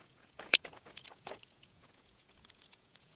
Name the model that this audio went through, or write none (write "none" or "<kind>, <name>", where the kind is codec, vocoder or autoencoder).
vocoder, Vocos